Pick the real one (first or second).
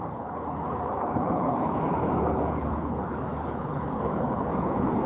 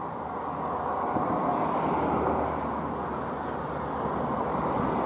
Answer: second